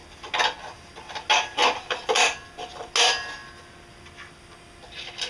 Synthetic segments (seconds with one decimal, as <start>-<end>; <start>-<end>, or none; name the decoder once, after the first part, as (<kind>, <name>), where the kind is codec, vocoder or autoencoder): none